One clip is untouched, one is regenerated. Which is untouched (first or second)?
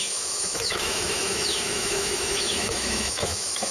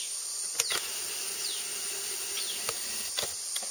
second